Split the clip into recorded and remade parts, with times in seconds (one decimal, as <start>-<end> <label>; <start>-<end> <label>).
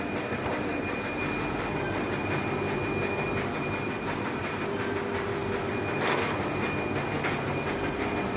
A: 0.0-8.4 recorded